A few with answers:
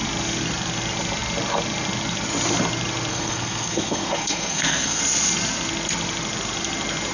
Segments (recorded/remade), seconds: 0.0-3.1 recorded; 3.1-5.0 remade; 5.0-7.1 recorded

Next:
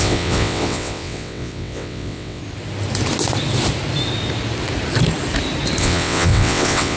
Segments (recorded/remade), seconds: 0.0-2.4 remade; 2.4-5.8 recorded; 5.8-7.0 remade

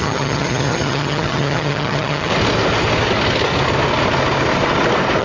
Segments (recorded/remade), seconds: 0.0-2.3 remade; 2.3-5.2 recorded

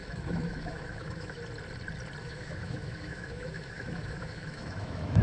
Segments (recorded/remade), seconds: 0.0-1.4 remade; 1.4-2.2 recorded; 2.2-5.2 remade

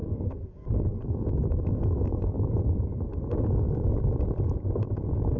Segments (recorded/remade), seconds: 0.0-2.6 remade; 2.6-5.4 recorded